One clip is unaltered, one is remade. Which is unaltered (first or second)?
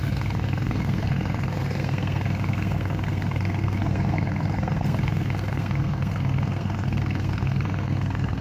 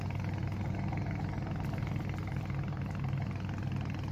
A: second